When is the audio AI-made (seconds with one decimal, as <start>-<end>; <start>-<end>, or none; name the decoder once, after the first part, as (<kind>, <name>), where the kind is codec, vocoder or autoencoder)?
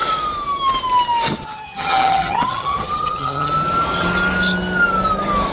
1.4-3.5 (vocoder, HiFi-GAN)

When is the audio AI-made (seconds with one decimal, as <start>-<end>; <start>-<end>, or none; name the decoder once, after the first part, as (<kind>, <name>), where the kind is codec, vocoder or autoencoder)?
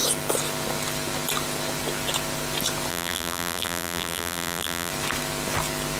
2.9-4.9 (vocoder, BigVGAN v2)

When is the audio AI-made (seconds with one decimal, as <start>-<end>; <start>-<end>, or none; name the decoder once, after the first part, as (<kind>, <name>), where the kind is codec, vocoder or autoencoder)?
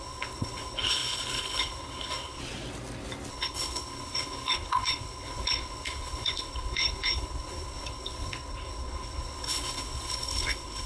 0.0-2.4 (codec, HILCodec); 3.3-10.9